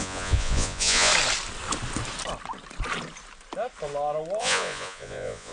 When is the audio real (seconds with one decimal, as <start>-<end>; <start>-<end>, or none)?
1.1-4.4